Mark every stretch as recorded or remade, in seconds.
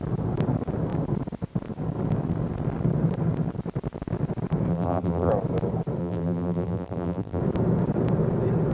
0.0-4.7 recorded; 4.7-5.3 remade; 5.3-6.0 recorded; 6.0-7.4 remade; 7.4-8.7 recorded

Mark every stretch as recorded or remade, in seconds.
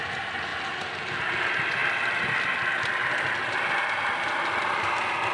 0.0-5.3 recorded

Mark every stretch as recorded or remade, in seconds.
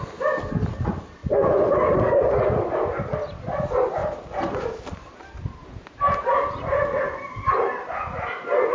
0.0-1.2 recorded; 1.2-3.0 remade; 3.0-4.0 recorded; 4.0-8.1 remade; 8.1-8.7 recorded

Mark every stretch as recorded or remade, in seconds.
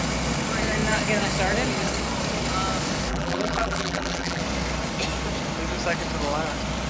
0.0-3.1 recorded; 3.1-4.4 remade; 4.4-6.9 recorded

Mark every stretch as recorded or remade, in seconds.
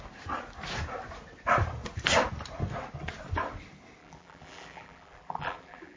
0.0-4.0 recorded; 4.0-6.0 remade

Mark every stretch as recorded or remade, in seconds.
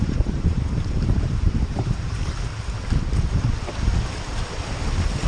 0.0-2.5 remade; 2.5-5.3 recorded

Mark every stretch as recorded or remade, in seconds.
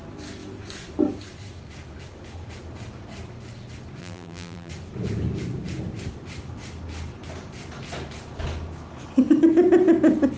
0.0-4.0 recorded; 4.0-4.7 remade; 4.7-10.4 recorded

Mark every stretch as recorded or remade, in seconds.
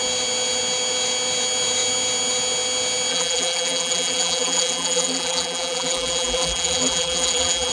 0.0-3.1 recorded; 3.1-7.7 remade